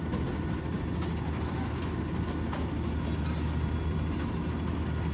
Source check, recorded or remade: recorded